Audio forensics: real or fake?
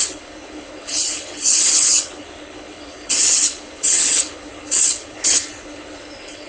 fake